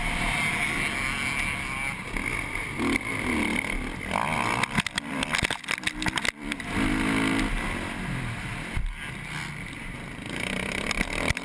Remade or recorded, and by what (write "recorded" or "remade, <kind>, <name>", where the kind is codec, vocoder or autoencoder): recorded